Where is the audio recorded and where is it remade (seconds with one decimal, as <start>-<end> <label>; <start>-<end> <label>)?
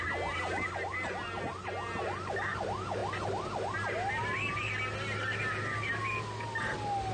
0.0-7.1 recorded